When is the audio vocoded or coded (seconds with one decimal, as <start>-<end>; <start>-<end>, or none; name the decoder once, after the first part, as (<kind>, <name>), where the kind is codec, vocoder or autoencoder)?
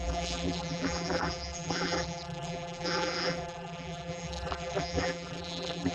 0.0-5.9 (vocoder, BigVGAN v2)